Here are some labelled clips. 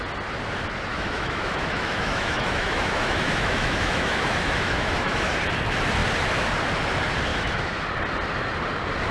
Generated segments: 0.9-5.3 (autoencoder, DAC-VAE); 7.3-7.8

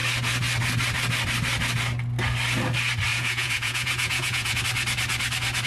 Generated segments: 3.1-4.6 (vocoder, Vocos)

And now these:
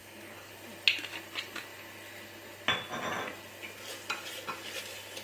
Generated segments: 0.0-0.5 (codec, DAC)

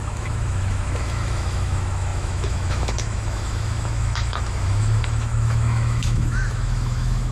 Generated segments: 0.0-7.3 (autoencoder, DAC-VAE)